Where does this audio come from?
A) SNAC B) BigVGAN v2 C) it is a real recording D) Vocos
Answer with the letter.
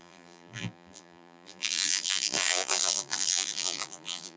B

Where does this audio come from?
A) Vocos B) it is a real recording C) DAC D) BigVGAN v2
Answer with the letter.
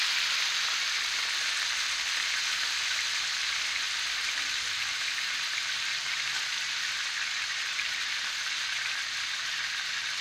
B